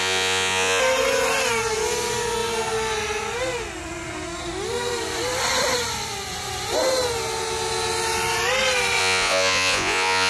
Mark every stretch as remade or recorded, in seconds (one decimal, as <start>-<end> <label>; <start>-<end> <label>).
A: 0.0-0.8 remade; 0.8-9.0 recorded; 9.0-10.3 remade